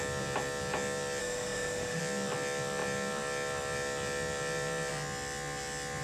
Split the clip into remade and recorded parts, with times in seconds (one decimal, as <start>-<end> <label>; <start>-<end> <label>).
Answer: 0.0-1.2 recorded; 1.2-2.0 remade; 2.0-6.0 recorded